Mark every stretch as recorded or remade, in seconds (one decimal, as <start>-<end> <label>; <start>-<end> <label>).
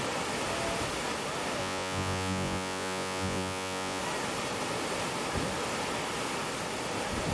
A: 0.0-1.6 recorded; 1.6-4.0 remade; 4.0-7.3 recorded